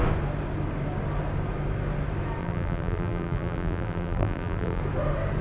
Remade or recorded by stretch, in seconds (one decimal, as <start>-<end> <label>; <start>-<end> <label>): 0.0-2.4 recorded; 2.4-4.8 remade; 4.8-5.4 recorded